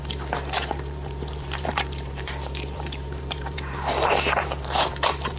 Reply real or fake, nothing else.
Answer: fake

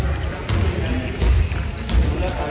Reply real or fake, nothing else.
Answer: real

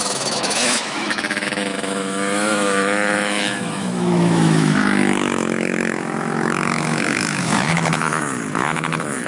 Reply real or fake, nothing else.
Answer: fake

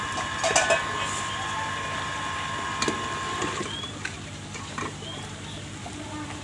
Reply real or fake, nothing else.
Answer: real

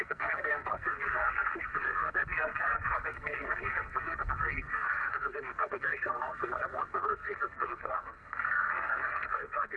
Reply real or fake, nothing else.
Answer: fake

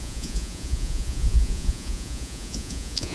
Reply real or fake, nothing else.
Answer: fake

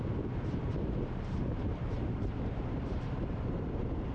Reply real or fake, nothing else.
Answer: fake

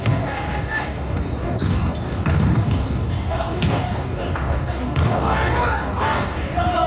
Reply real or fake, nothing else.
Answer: fake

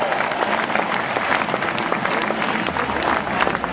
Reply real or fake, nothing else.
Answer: real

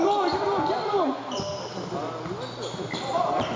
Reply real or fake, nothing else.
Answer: real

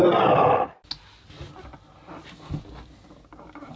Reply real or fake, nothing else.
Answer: real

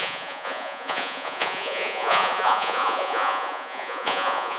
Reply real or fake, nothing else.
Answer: fake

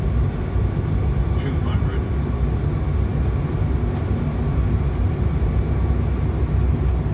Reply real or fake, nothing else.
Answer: real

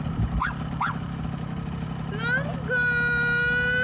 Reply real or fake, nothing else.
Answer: real